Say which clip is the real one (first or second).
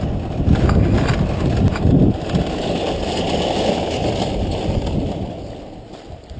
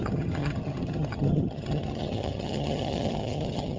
first